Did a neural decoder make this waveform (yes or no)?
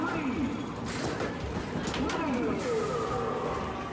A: no